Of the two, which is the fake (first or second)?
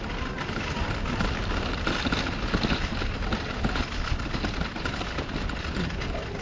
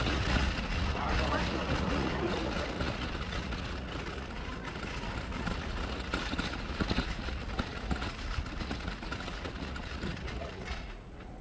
second